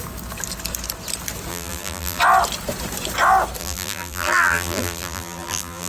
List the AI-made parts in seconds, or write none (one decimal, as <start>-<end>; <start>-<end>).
1.5-2.2; 3.6-5.9